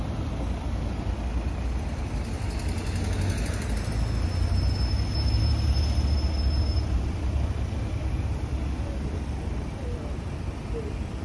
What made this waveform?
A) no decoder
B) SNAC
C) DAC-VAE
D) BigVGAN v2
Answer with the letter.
A